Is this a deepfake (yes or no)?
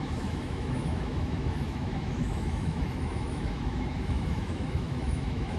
yes